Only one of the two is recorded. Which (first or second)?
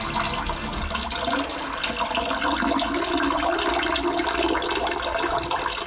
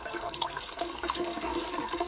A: first